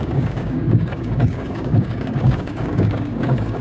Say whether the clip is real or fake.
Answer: fake